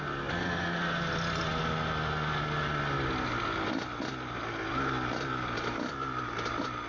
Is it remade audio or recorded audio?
recorded